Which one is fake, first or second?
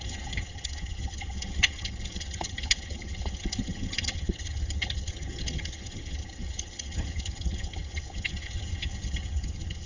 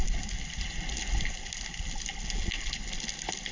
first